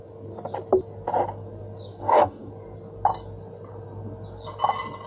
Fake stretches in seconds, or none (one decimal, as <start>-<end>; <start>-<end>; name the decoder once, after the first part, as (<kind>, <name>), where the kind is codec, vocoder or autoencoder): 2.0-2.5 (codec, DAC)